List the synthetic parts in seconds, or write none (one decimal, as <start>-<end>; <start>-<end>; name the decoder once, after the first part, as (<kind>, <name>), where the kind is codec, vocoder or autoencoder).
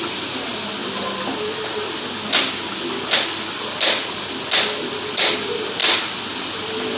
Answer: none